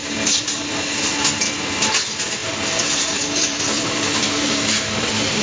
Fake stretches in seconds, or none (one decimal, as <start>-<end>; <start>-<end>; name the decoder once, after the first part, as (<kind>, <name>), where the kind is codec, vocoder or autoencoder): 0.0-1.1 (vocoder, BigVGAN v2); 2.4-5.4